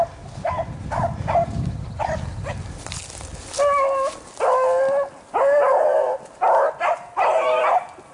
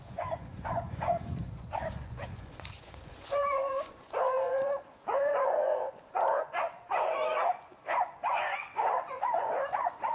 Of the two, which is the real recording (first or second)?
first